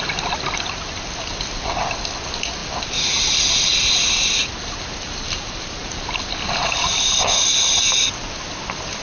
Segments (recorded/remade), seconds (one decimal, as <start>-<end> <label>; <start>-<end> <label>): 0.0-4.4 recorded; 4.4-5.9 remade; 5.9-9.0 recorded